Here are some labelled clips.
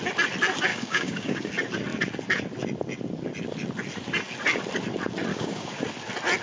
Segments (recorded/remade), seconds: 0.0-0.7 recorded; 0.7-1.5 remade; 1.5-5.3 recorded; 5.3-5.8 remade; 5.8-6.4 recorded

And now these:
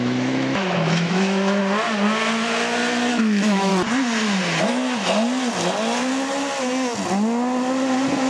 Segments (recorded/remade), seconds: 0.0-1.6 remade; 1.6-3.1 recorded; 3.1-3.7 remade; 3.7-8.3 recorded